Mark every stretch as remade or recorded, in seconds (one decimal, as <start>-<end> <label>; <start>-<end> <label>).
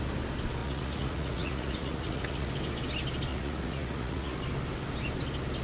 0.0-0.6 recorded; 0.6-2.5 remade; 2.5-3.3 recorded; 3.3-4.4 remade; 4.4-5.6 recorded